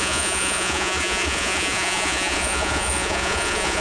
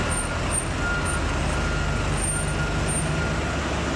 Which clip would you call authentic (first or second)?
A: second